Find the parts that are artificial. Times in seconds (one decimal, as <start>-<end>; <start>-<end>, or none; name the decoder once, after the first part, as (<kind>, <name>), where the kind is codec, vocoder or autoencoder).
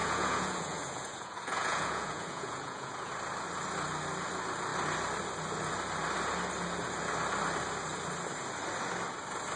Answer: 0.0-3.1 (vocoder, Vocos)